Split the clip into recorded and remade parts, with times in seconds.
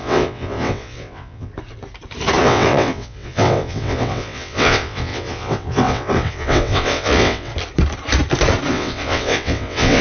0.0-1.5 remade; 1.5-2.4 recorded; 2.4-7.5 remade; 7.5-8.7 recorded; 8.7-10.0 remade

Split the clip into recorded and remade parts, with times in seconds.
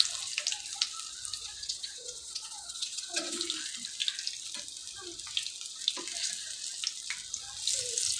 0.0-1.4 recorded; 1.4-3.4 remade; 3.4-8.2 recorded